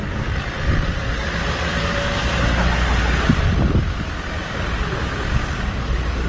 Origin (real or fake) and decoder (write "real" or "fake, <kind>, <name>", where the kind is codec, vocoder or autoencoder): real